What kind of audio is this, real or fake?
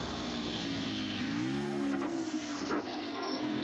fake